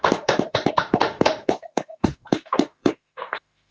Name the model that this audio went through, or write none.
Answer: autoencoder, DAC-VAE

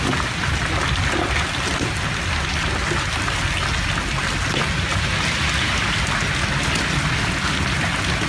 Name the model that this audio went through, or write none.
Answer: none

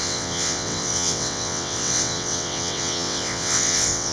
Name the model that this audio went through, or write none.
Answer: vocoder, WaveNeXt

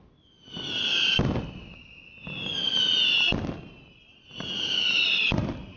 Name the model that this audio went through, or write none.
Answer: vocoder, BigVGAN v2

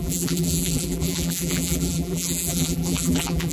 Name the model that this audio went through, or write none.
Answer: vocoder, BigVGAN v2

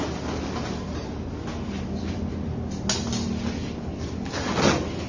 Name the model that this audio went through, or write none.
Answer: none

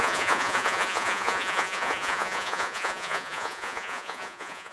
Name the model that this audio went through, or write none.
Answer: vocoder, Vocos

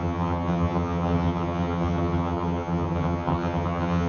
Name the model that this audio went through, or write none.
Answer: vocoder, HiFi-GAN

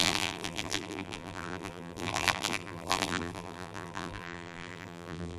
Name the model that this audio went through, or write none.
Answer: vocoder, BigVGAN v2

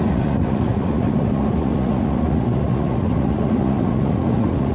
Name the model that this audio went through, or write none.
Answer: vocoder, Vocos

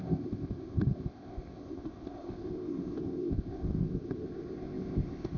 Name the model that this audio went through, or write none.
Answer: codec, ZipCodec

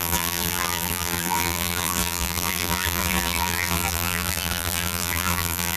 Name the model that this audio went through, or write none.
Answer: vocoder, BigVGAN v2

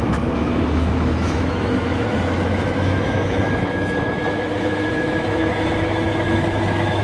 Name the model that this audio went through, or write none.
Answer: autoencoder, DAC-VAE